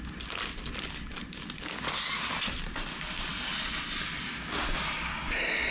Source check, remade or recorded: recorded